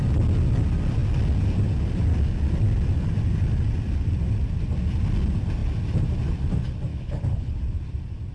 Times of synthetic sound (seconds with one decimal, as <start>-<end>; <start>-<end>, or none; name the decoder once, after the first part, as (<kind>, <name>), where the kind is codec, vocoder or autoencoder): 6.9-7.6 (codec, HILCodec)